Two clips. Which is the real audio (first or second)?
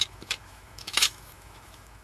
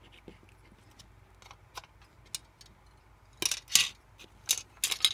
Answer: second